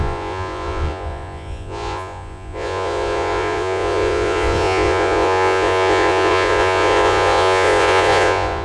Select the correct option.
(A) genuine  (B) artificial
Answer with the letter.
B